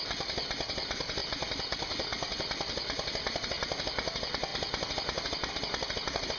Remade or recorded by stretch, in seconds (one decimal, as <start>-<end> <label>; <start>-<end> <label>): 0.0-1.2 recorded; 1.2-2.5 remade; 2.5-6.4 recorded